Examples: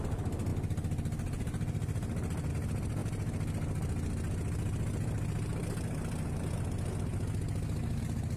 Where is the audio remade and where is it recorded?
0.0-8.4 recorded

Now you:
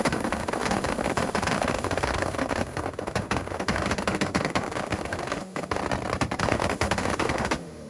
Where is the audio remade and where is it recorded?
0.0-5.8 remade; 5.8-6.4 recorded; 6.4-7.9 remade

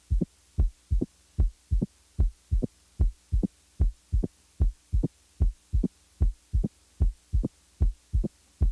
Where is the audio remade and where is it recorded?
0.0-8.7 recorded

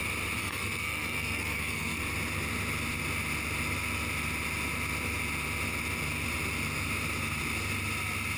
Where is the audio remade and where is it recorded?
0.0-0.4 recorded; 0.4-2.0 remade; 2.0-8.4 recorded